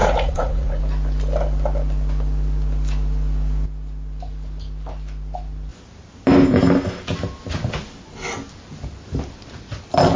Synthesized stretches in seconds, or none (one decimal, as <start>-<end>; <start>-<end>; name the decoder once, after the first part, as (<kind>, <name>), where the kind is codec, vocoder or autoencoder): 0.0-0.8 (vocoder, Vocos)